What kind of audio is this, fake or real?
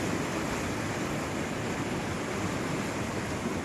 real